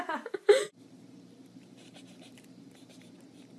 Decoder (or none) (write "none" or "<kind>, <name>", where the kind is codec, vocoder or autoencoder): vocoder, BigVGAN v2